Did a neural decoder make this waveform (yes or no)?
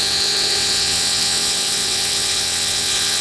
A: yes